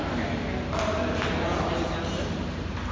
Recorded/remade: recorded